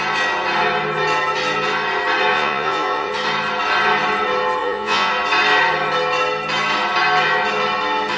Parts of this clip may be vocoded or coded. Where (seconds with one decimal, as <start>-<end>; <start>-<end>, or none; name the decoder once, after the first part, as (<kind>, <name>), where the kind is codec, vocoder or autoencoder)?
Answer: 2.3-3.1 (vocoder, Vocos); 4.6-5.1